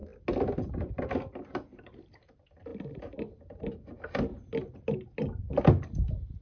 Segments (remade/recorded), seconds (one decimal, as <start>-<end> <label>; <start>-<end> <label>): 0.0-6.4 recorded